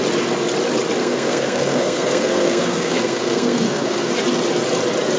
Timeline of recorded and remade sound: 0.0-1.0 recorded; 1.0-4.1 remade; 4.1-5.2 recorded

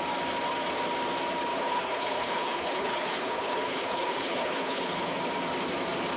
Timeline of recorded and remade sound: 0.0-1.5 recorded; 1.5-5.2 remade; 5.2-6.2 recorded

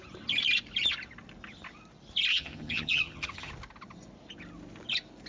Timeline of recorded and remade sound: 0.0-2.3 recorded; 2.3-3.5 remade; 3.5-5.3 recorded